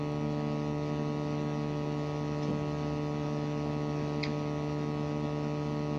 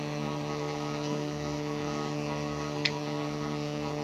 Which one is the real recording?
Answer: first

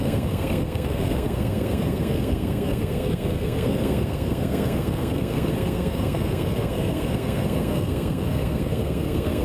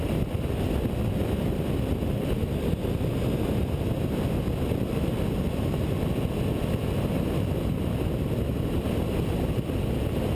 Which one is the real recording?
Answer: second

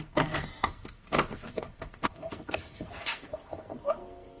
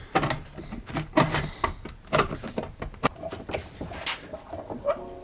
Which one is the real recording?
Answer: second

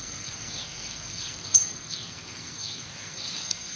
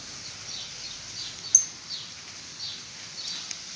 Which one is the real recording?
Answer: second